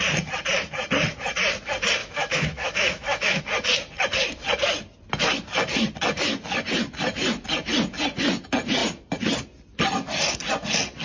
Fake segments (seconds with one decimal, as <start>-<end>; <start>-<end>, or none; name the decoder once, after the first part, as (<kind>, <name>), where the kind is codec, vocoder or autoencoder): 2.0-3.4 (autoencoder, DAC-VAE)